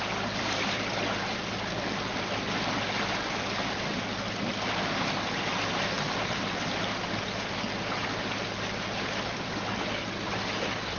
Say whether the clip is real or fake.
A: real